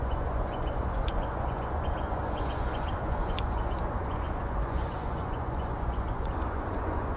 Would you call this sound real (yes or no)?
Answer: no